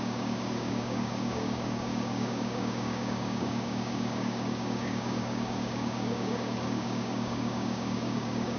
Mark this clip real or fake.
fake